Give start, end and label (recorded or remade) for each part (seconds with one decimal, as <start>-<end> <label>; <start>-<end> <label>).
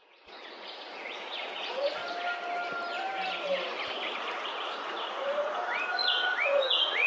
0.0-2.0 remade; 2.0-4.1 recorded; 4.1-7.1 remade